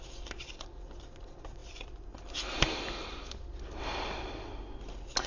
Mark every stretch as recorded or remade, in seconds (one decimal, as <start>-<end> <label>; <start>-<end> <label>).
0.0-5.3 recorded